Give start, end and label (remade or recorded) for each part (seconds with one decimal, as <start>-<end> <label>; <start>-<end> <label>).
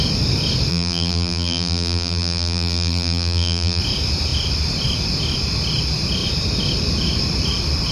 0.0-0.7 recorded; 0.7-3.8 remade; 3.8-7.9 recorded